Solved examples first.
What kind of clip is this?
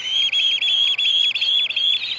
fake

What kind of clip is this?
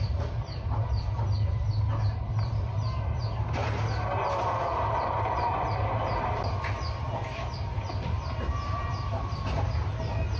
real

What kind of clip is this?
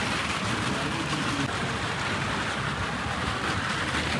real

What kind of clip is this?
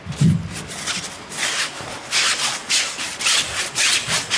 real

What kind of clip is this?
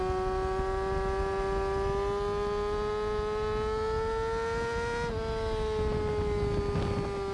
real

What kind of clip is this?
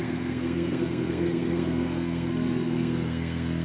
fake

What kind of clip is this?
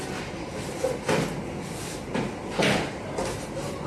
real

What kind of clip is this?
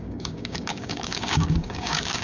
fake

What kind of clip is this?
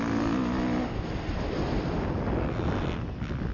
real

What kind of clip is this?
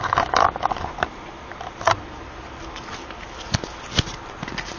real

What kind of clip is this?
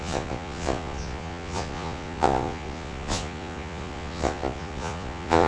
fake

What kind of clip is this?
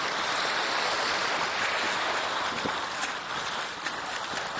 real